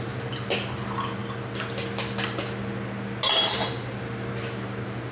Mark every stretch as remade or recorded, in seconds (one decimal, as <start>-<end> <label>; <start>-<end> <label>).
0.0-5.1 recorded